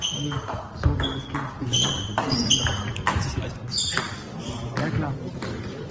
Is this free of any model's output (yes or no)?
yes